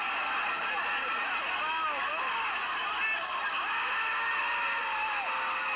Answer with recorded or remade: recorded